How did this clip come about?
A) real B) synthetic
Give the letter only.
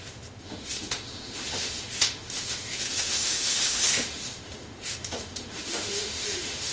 B